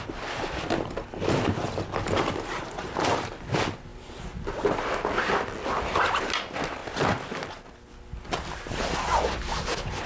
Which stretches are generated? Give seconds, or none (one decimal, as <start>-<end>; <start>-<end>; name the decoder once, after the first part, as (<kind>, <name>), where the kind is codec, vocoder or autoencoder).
none